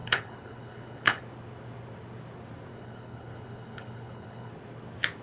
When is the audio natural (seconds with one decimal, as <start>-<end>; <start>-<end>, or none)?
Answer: 1.2-2.7; 4.5-5.2